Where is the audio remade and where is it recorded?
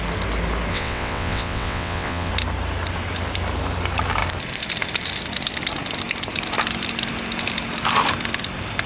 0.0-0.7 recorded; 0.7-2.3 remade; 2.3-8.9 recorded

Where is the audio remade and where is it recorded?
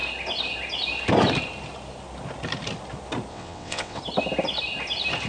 0.0-3.3 recorded; 3.3-4.0 remade; 4.0-5.3 recorded